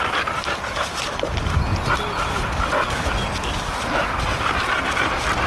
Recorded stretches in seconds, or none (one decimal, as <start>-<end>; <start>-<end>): 0.0-5.5